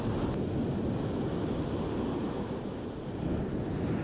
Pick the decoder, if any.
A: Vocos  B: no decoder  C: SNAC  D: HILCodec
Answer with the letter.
B